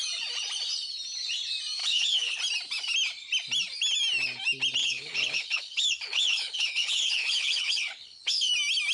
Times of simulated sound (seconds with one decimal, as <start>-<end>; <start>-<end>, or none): 1.8-2.4; 4.8-8.5